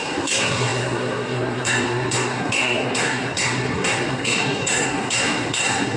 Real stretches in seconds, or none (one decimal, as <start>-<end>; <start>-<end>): none